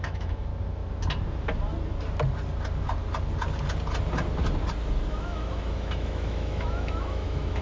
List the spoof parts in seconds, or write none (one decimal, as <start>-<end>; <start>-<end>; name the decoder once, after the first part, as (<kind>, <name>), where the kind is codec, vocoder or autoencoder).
0.0-0.5 (autoencoder, DAC-VAE); 5.1-7.6